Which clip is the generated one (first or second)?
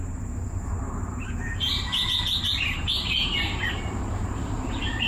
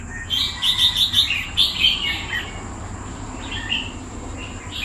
first